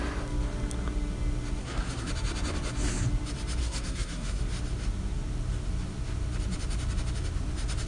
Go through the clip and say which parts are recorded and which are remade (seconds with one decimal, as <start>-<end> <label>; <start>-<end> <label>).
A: 0.0-1.6 recorded; 1.6-2.1 remade; 2.1-3.6 recorded; 3.6-4.4 remade; 4.4-7.9 recorded